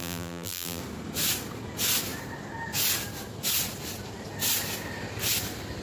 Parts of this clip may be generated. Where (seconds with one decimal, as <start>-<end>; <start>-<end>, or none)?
0.0-0.8

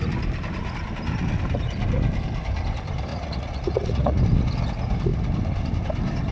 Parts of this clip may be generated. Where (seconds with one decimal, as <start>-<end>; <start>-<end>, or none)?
3.1-4.2

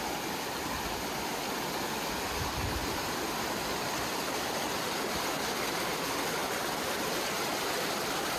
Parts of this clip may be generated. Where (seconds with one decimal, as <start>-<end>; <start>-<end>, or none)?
2.8-3.3

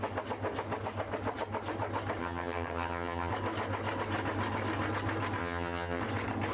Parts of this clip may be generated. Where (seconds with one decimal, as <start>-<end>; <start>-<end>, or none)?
2.2-3.3; 5.4-6.0

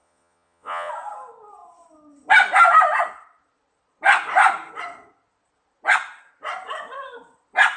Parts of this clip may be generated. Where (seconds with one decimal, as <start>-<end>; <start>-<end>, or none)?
0.0-0.9

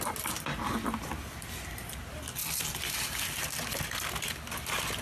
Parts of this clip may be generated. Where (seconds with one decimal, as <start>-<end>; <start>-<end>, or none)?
none